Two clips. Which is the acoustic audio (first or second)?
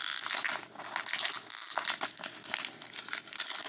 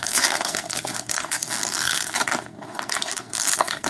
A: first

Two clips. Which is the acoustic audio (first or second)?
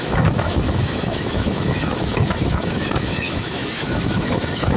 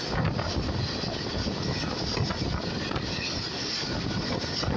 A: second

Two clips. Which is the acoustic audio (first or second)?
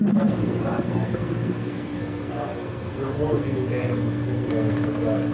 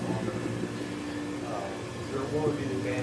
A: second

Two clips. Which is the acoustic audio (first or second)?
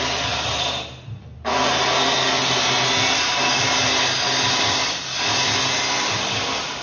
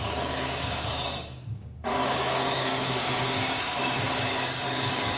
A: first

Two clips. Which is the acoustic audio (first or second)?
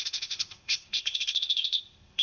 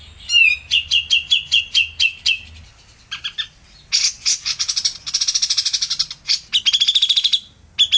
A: second